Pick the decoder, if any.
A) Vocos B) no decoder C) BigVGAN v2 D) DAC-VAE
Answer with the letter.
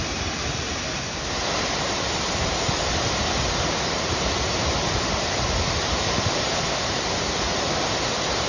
B